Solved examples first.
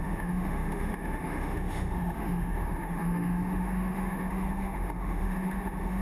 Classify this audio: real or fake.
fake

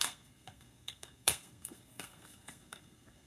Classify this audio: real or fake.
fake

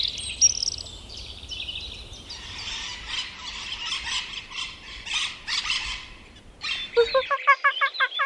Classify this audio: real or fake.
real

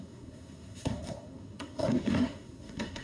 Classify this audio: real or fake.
fake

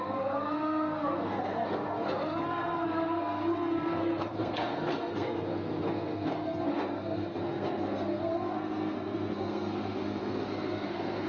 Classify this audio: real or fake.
fake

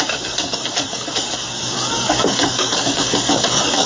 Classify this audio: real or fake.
fake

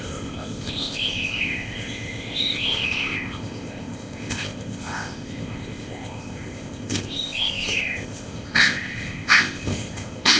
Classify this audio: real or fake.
fake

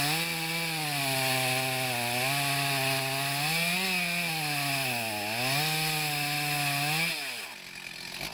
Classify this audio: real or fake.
real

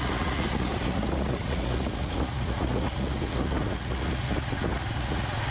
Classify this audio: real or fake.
fake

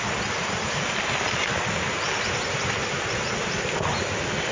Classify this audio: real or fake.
real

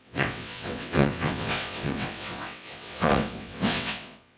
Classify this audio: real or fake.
fake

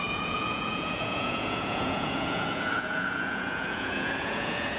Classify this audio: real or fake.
fake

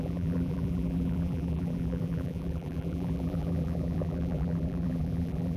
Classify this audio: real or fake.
fake